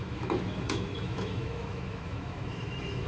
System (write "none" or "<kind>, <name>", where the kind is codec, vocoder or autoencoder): autoencoder, DAC-VAE